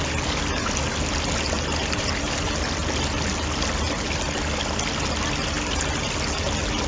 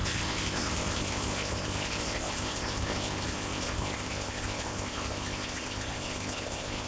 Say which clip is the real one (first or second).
first